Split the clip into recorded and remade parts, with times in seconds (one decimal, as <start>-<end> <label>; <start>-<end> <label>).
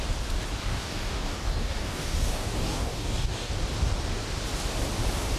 0.0-0.6 recorded; 0.6-3.5 remade; 3.5-5.4 recorded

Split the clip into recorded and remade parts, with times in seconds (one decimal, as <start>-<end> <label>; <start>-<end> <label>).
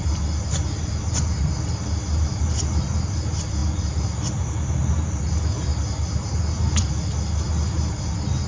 0.0-8.5 recorded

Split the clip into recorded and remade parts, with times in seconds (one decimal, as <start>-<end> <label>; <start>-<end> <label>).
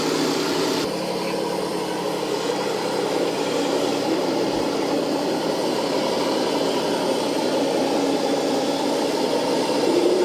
0.0-3.9 recorded; 3.9-5.8 remade; 5.8-10.2 recorded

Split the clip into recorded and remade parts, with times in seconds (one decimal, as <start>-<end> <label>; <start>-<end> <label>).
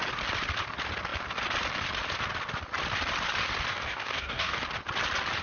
0.0-3.7 recorded; 3.7-4.6 remade; 4.6-5.4 recorded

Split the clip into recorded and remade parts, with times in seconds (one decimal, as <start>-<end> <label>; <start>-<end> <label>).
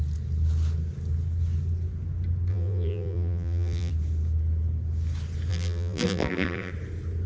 0.0-2.5 recorded; 2.5-3.9 remade; 3.9-5.5 recorded; 5.5-6.7 remade; 6.7-7.3 recorded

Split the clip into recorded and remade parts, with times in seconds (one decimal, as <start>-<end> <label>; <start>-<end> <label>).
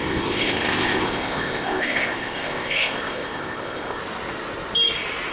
0.0-4.0 remade; 4.0-5.3 recorded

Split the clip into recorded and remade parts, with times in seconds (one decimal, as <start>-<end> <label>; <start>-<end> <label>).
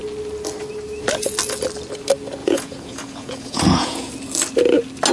0.0-2.4 recorded; 2.4-4.1 remade; 4.1-5.1 recorded